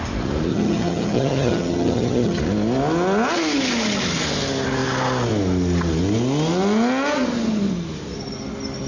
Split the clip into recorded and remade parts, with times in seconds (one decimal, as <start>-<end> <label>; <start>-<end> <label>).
0.0-0.5 recorded; 0.5-2.4 remade; 2.4-8.9 recorded